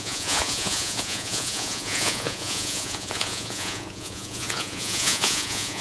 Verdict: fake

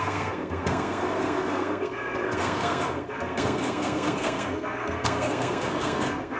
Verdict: fake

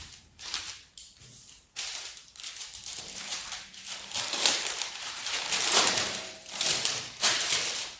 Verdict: fake